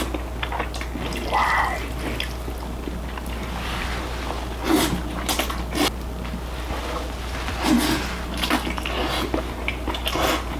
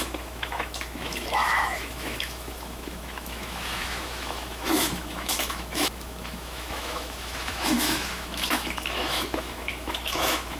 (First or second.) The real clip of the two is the first